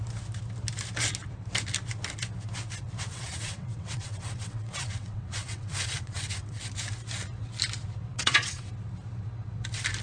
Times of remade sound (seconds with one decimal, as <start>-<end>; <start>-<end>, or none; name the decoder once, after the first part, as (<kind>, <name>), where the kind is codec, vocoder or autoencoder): 3.1-6.6 (vocoder, WaveNeXt); 8.1-8.7